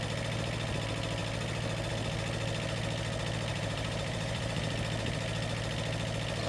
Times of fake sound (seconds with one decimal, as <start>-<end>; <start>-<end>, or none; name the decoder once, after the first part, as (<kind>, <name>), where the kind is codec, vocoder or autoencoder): 3.5-4.7 (vocoder, BigVGAN v2)